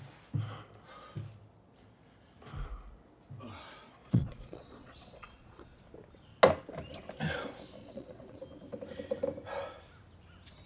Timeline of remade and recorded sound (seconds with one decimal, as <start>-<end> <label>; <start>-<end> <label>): 0.0-4.0 recorded; 4.0-5.8 remade; 5.8-7.8 recorded; 7.8-8.4 remade; 8.4-10.7 recorded